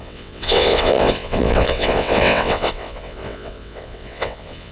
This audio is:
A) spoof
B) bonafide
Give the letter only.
A